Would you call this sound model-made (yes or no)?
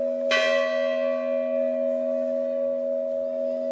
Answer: no